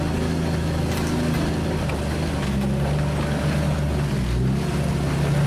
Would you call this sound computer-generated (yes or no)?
no